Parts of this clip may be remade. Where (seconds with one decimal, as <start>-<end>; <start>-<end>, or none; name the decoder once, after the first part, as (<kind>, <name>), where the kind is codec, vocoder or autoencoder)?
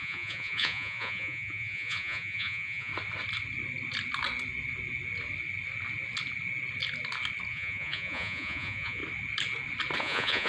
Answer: 0.0-2.9 (vocoder, Vocos); 7.5-9.0; 10.0-10.5